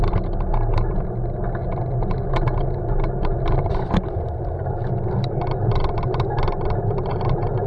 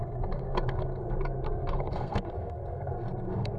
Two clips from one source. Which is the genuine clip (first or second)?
first